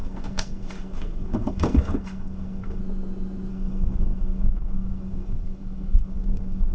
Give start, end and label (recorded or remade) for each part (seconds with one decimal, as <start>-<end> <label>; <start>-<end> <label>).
0.0-2.8 remade; 2.8-3.5 recorded; 3.5-6.7 remade